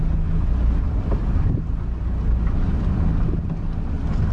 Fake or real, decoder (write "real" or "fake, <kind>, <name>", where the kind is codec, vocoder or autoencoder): real